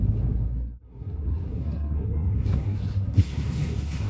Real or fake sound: fake